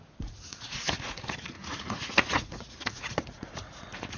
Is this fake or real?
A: fake